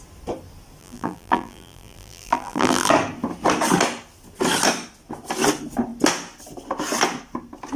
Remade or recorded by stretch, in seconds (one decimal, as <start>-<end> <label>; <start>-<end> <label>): 0.0-0.8 recorded; 0.8-2.9 remade; 2.9-7.8 recorded